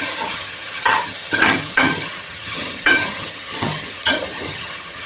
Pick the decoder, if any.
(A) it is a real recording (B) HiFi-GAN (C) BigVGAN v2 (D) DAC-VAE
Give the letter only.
B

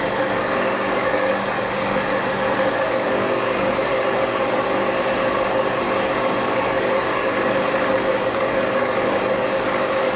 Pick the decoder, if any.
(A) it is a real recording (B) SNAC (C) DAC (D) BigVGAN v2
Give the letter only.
C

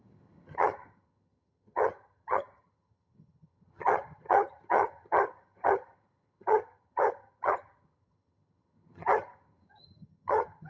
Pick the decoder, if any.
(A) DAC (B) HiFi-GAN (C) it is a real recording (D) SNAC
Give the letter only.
B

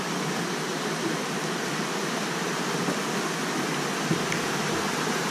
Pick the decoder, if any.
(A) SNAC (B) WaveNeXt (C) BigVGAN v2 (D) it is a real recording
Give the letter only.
D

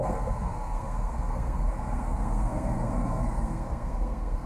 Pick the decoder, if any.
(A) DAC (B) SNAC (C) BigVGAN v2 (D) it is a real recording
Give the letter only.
B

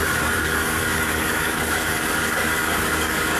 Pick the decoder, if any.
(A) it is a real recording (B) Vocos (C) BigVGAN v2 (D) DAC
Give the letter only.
D